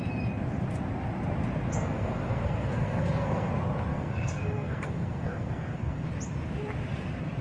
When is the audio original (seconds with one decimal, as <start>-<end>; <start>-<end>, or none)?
0.0-1.7; 3.5-3.9; 6.1-7.4

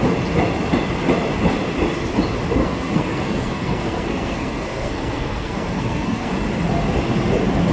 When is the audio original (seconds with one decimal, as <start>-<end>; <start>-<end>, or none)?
0.0-2.6; 6.3-7.7

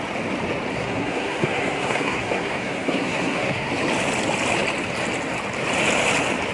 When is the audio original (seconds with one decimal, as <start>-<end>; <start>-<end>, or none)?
0.0-0.7; 3.7-6.5